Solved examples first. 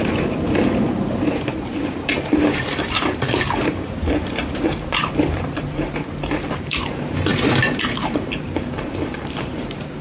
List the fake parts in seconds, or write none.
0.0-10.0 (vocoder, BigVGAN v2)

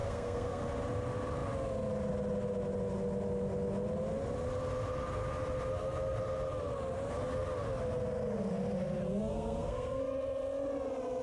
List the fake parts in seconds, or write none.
0.0-0.6 (codec, SNAC); 9.3-10.0